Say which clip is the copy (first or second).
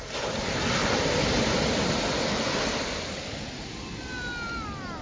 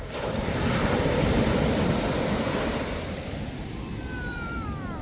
second